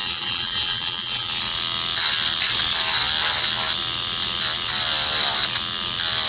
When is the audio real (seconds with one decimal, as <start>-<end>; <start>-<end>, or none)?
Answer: 1.3-6.3